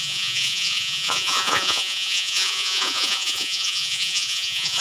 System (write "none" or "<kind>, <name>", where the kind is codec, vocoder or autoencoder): vocoder, Vocos